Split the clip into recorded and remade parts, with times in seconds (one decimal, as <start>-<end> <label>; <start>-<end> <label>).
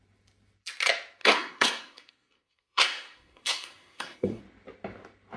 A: 0.0-1.2 recorded; 1.2-4.4 remade; 4.4-5.4 recorded